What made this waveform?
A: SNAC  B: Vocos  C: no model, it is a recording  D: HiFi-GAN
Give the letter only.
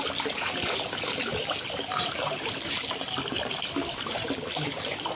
C